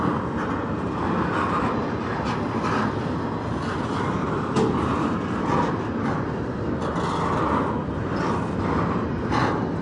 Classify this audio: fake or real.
real